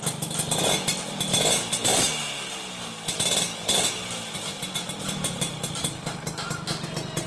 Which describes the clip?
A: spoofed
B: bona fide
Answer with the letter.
B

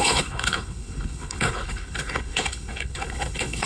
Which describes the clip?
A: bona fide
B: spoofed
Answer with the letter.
B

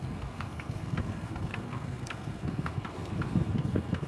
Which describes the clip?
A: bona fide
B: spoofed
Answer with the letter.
B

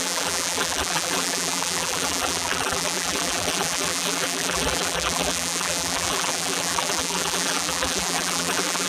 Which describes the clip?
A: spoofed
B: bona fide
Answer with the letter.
A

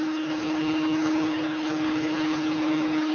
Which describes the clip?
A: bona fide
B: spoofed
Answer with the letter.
B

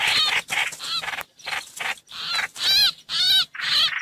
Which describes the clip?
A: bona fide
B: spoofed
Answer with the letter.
A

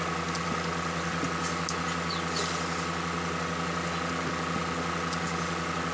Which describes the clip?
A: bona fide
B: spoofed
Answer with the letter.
A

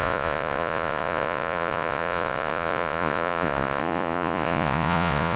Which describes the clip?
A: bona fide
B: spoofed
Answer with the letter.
B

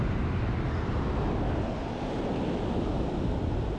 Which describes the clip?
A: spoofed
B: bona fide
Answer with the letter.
B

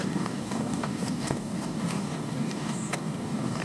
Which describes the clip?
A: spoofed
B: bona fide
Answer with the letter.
A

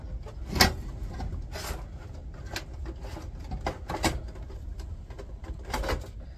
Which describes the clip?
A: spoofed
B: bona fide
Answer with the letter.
B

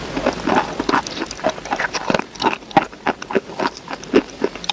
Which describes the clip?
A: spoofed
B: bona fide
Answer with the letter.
B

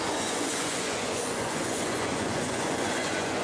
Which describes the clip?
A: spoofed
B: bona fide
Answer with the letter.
A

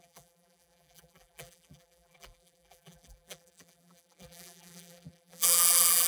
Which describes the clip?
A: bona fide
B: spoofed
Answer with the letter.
B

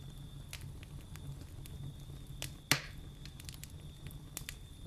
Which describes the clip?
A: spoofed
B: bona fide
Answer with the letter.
B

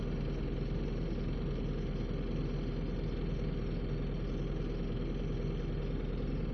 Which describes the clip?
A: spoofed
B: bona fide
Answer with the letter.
B